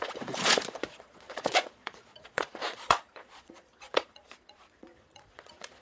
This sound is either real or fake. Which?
fake